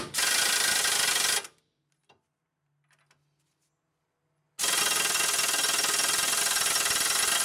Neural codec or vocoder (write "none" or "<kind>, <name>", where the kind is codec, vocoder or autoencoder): none